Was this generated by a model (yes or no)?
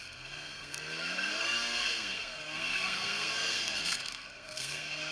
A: yes